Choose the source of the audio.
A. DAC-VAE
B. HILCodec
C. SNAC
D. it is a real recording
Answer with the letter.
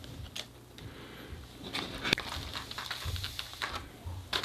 D